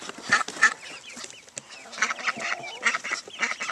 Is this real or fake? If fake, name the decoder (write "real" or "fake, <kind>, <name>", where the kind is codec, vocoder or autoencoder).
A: real